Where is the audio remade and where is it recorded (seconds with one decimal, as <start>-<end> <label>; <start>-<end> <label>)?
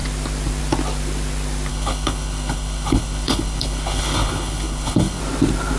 0.0-1.7 recorded; 1.7-5.2 remade; 5.2-5.8 recorded